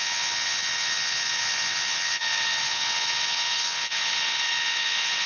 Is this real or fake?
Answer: fake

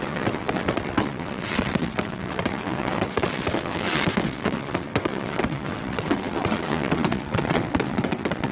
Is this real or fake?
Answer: fake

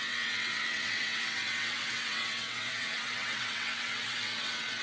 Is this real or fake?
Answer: fake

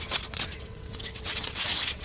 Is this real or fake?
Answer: fake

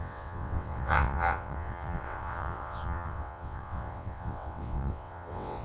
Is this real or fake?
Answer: fake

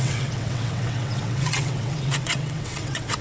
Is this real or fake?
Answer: fake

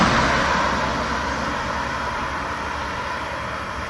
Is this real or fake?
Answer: real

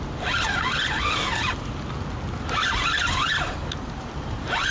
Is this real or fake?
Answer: real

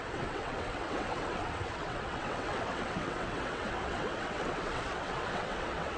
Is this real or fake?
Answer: fake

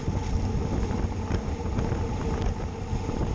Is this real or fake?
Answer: real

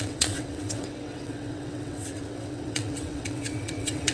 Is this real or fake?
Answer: fake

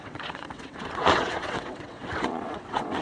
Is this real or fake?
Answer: fake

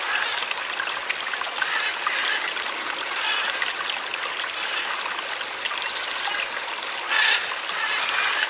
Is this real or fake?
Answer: real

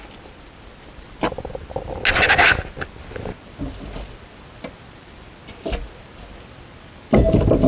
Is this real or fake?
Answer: real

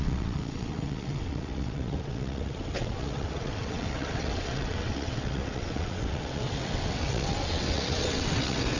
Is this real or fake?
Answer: fake